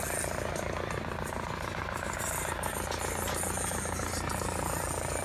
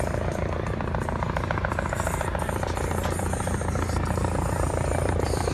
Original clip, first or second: first